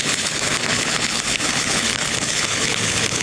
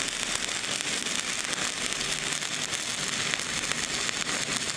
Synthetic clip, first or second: first